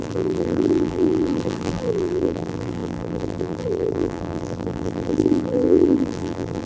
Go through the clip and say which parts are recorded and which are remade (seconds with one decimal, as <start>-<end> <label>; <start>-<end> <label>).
0.0-6.7 remade